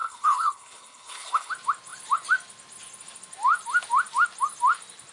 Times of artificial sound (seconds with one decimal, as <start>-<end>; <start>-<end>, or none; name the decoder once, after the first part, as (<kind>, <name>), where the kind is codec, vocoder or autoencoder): 0.0-1.5 (codec, HILCodec)